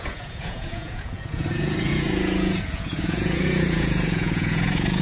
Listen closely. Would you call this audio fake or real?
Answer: fake